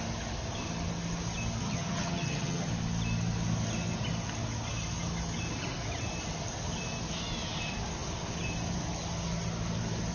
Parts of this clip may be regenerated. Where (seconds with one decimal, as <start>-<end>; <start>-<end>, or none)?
1.6-2.7